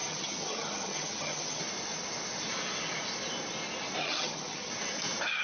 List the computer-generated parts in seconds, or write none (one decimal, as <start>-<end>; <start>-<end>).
0.0-1.6; 4.0-4.7